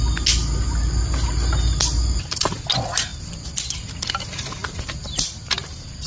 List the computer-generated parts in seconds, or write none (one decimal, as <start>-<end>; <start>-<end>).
none